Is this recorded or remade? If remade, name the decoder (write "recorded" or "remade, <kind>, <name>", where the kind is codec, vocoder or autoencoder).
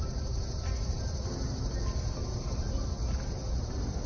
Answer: recorded